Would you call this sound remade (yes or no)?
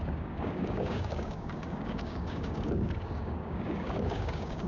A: yes